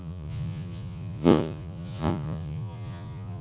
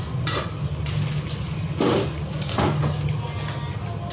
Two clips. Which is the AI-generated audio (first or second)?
first